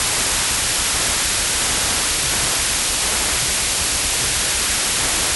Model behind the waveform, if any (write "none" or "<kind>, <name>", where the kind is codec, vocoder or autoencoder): none